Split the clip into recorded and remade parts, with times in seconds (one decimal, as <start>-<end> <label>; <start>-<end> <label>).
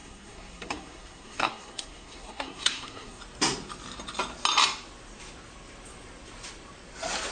0.0-3.2 remade; 3.2-7.3 recorded